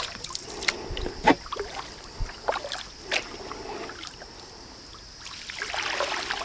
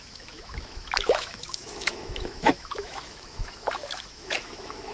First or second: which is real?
first